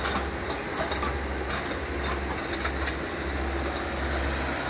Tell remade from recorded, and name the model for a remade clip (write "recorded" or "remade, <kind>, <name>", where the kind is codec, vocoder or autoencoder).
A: recorded